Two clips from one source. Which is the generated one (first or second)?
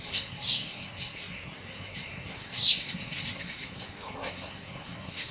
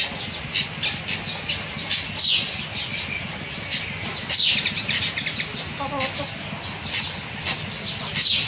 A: first